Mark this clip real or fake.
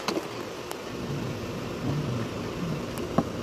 real